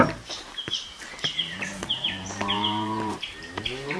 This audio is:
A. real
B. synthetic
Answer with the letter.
B